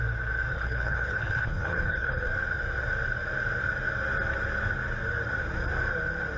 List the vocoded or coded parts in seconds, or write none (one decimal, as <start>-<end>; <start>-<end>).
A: 0.5-2.3